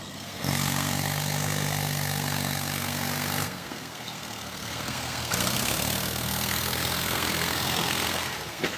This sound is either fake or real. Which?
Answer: fake